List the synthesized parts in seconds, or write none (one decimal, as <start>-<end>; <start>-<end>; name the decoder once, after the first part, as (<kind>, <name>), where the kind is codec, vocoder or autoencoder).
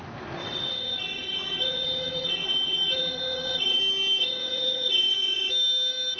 0.4-3.8 (vocoder, WaveNeXt); 4.2-5.5